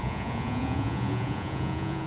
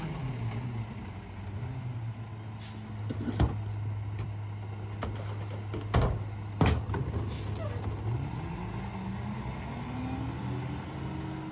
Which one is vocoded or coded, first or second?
first